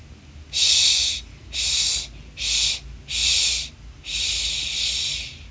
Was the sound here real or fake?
real